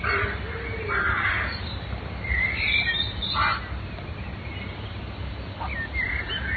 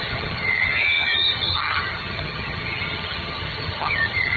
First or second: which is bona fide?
first